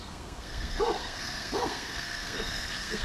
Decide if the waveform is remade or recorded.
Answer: remade